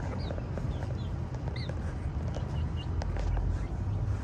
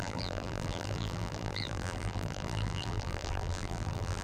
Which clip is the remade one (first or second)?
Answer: second